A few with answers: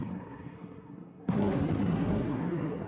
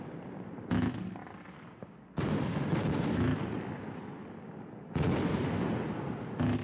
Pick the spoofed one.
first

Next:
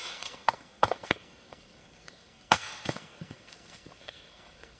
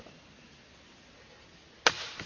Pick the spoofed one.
first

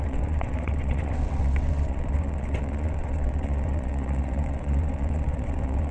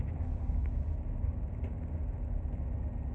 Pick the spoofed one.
first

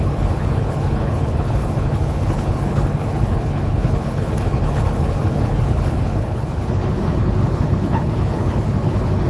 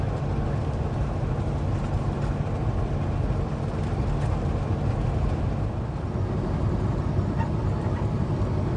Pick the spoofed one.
first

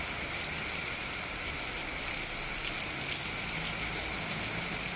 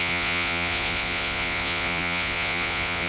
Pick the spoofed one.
second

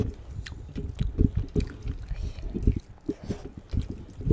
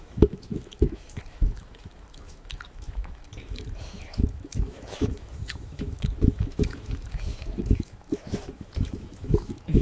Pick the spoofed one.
second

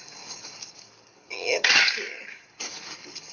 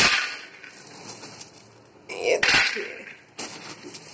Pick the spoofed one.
first